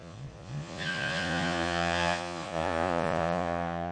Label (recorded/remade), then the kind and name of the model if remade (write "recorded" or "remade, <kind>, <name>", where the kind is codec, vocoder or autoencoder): remade, vocoder, Vocos